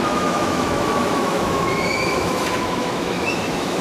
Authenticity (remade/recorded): remade